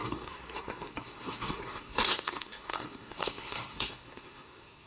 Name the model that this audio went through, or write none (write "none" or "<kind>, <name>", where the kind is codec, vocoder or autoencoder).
codec, SNAC